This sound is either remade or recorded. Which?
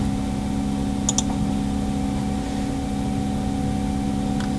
recorded